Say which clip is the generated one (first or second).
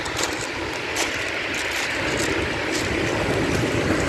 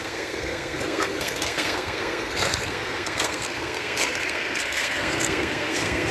second